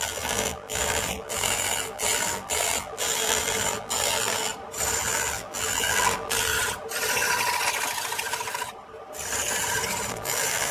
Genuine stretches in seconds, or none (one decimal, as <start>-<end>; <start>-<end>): 4.5-5.0; 6.5-10.1